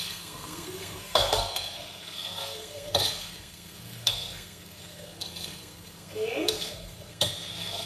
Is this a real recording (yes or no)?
no